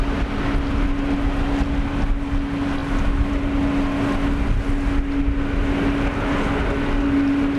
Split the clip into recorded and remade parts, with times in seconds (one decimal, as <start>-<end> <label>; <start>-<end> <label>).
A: 0.0-7.6 recorded